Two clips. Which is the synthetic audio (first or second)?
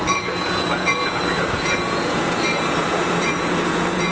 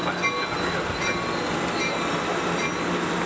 first